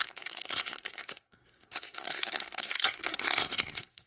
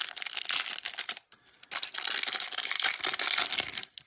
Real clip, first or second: second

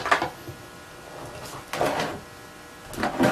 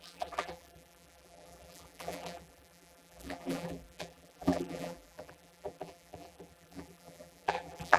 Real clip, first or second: first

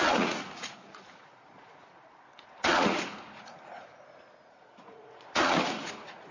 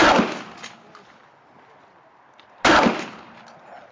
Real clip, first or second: second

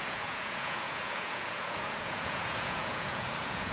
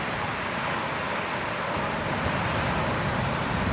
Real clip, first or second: second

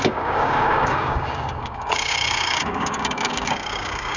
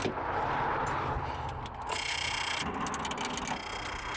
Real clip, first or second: second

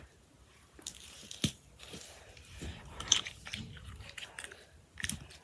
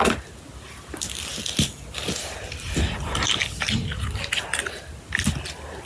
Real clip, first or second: second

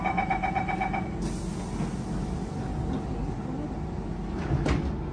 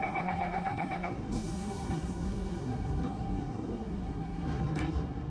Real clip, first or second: first